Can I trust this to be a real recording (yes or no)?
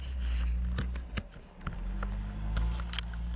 yes